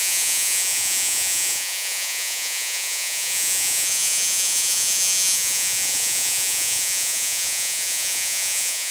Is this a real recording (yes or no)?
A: no